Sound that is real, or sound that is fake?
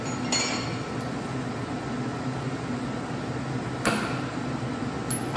real